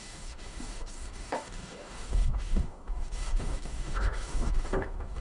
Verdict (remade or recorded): remade